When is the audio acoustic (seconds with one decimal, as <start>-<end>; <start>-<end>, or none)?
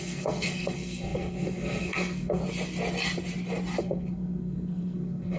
2.4-3.8